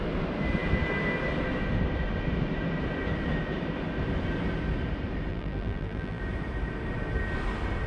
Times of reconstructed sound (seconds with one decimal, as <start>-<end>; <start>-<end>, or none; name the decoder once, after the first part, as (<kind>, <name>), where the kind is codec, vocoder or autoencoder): 5.3-6.2 (vocoder, BigVGAN v2)